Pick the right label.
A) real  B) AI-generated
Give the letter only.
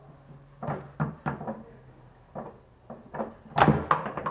A